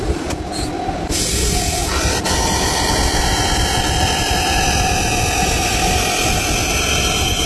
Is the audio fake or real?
real